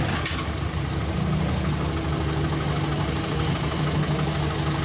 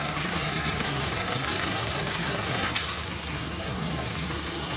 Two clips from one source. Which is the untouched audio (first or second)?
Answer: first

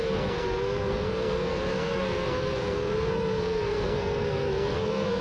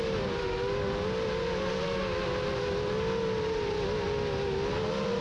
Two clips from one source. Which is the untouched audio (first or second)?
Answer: second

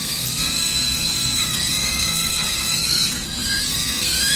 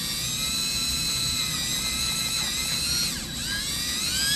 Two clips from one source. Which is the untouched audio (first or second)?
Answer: second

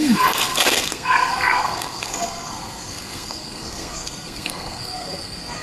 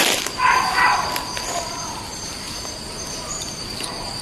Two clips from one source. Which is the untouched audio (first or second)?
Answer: second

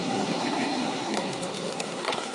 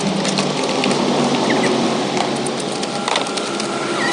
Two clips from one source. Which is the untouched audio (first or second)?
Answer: second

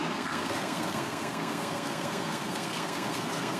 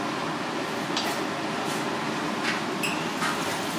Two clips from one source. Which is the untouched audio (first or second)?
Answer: second